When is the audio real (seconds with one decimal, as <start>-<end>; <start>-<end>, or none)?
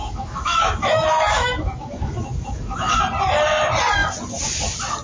3.0-5.0